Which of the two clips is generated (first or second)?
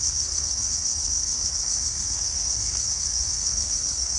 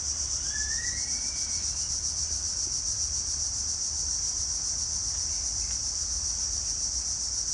first